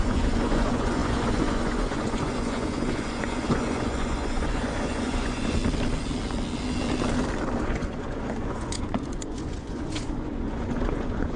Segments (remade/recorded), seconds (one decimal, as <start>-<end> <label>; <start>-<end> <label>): 0.0-5.6 remade; 5.6-7.6 recorded; 7.6-11.4 remade